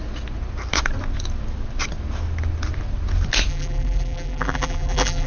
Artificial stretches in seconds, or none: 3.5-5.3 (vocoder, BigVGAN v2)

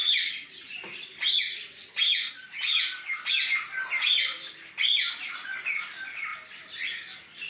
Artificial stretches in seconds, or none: none

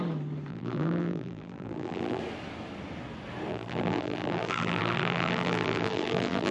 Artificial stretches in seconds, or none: 0.5-2.2 (vocoder, BigVGAN v2); 3.5-6.5

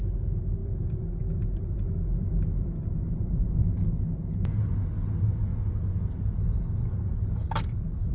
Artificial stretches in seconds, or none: 0.6-3.0 (vocoder, BigVGAN v2)

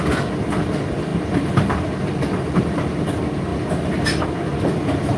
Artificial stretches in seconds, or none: 3.5-4.2 (vocoder, BigVGAN v2)

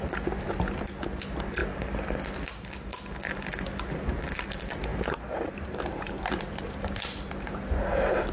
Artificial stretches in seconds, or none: 4.9-7.0 (vocoder, BigVGAN v2)

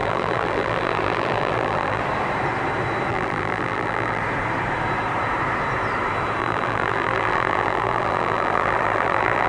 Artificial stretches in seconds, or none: 0.0-2.0 (vocoder, BigVGAN v2); 3.1-4.2; 6.4-9.5

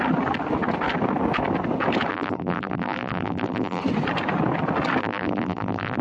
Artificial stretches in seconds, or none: 2.1-3.8 (vocoder, BigVGAN v2); 5.0-6.0